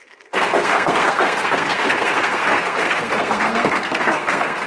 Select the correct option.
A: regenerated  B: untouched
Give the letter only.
A